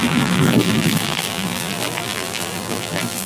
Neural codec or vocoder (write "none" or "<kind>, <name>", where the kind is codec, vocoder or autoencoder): vocoder, BigVGAN v2